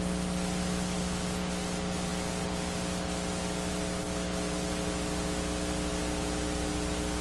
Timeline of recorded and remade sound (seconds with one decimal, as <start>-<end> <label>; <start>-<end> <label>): 0.0-7.2 recorded